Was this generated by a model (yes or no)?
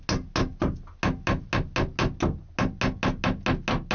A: no